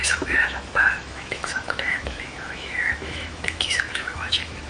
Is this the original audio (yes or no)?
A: no